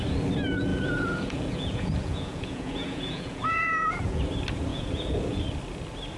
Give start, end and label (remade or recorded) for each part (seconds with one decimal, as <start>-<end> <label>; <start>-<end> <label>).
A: 0.0-0.7 recorded; 0.7-4.2 remade; 4.2-4.7 recorded; 4.7-5.4 remade; 5.4-6.2 recorded